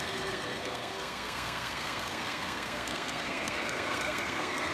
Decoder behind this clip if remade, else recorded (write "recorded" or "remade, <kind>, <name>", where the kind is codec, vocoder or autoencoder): remade, codec, SNAC